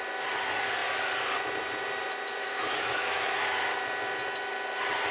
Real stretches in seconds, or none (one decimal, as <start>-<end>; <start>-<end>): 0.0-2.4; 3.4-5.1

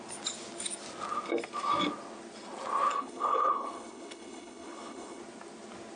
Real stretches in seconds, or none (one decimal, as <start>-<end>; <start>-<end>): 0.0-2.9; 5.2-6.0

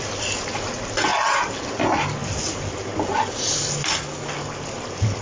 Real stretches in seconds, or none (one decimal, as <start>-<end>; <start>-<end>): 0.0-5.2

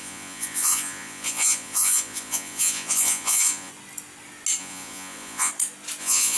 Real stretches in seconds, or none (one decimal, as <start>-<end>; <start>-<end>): 3.7-4.6; 5.5-6.0

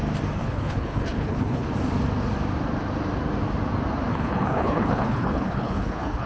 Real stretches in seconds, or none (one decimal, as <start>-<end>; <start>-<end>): 0.0-0.4; 1.7-4.1

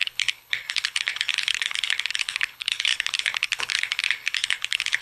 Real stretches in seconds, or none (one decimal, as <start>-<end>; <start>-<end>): none